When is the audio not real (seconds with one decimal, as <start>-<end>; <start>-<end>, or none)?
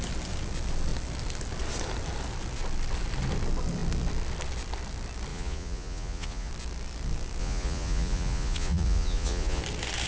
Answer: 5.3-6.5; 7.4-9.6